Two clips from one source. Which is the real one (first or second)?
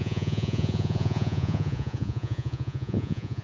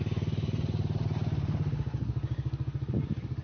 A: second